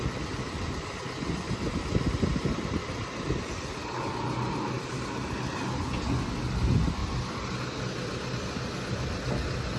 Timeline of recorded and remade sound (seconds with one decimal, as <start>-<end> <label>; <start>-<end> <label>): 0.0-9.8 recorded